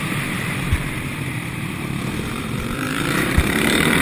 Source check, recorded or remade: remade